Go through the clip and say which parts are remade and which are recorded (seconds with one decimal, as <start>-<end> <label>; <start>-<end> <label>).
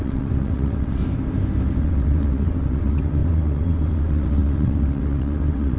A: 0.0-1.0 remade; 1.0-1.8 recorded; 1.8-5.8 remade